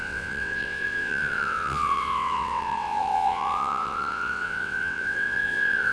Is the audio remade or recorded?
remade